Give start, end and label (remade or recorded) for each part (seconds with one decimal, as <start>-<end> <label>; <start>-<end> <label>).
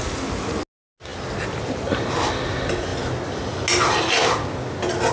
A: 0.0-5.1 recorded